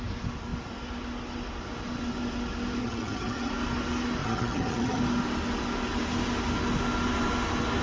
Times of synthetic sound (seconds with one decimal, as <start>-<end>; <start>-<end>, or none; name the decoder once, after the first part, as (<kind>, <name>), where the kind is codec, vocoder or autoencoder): 2.8-3.5 (vocoder, HiFi-GAN); 4.2-5.0